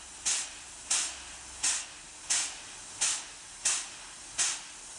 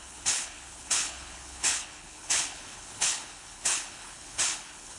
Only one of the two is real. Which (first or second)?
first